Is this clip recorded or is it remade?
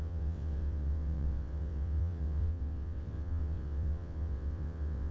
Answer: remade